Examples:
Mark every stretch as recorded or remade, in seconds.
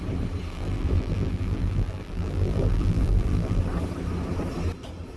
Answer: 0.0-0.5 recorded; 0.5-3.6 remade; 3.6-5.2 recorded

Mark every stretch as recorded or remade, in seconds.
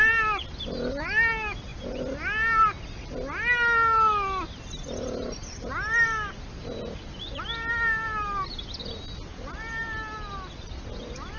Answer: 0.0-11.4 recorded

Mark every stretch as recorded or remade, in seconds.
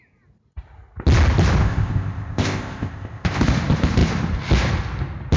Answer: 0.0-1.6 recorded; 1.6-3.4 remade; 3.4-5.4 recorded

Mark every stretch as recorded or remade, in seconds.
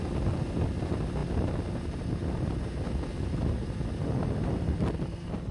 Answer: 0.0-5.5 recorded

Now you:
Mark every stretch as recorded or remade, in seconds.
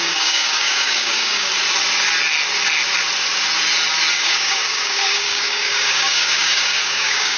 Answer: 0.0-1.5 remade; 1.5-4.1 recorded; 4.1-7.4 remade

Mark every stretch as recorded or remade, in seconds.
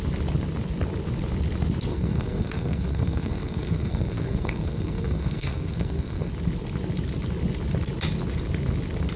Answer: 0.0-1.9 recorded; 1.9-6.3 remade; 6.3-9.2 recorded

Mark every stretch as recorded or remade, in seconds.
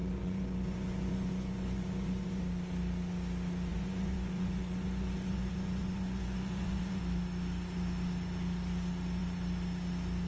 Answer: 0.0-2.4 remade; 2.4-3.7 recorded; 3.7-7.0 remade; 7.0-10.3 recorded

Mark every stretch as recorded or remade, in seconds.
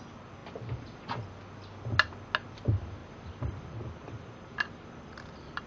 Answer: 0.0-5.7 recorded